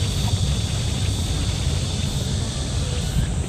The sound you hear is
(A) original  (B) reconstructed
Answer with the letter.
A